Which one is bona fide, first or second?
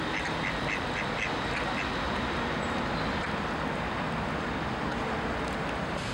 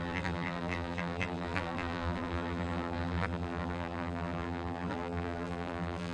first